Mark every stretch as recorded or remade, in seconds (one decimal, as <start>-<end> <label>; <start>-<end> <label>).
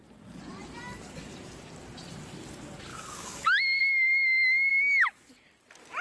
0.0-2.9 recorded; 2.9-3.8 remade; 3.8-4.7 recorded; 4.7-5.3 remade; 5.3-6.0 recorded